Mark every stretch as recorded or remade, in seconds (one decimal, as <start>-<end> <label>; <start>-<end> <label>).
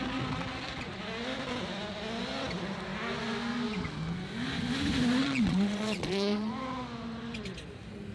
0.0-5.2 recorded; 5.2-6.5 remade; 6.5-8.1 recorded